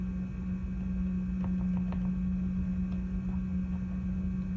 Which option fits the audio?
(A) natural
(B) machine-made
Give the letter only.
A